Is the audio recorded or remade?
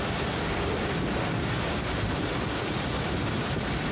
recorded